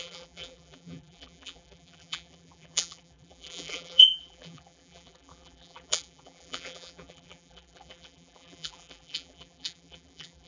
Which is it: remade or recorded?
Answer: remade